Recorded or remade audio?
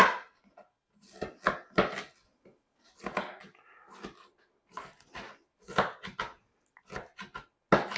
recorded